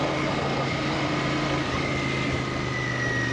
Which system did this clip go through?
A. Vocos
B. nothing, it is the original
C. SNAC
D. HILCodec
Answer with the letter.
B